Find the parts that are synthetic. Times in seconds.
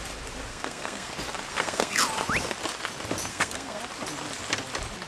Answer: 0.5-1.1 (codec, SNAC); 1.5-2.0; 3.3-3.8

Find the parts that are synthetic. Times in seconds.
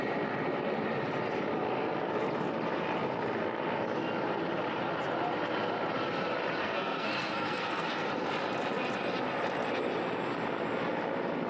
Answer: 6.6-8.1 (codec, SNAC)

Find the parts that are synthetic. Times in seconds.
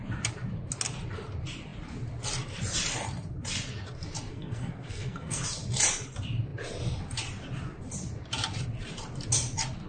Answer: 4.3-5.4 (codec, SNAC)